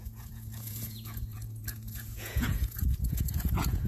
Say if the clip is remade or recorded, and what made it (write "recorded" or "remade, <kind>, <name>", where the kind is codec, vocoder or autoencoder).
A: remade, vocoder, Vocos